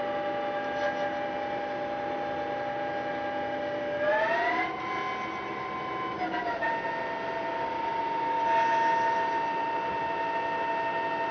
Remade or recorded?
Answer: recorded